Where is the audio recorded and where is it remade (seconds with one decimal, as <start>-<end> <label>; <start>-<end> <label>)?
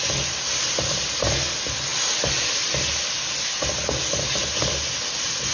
0.0-5.5 recorded